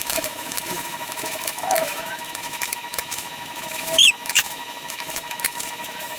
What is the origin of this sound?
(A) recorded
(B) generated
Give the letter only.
B